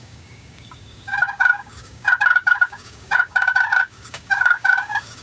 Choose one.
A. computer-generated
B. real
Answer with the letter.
A